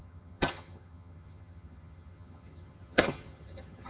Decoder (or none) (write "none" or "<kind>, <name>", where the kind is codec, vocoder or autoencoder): vocoder, HiFi-GAN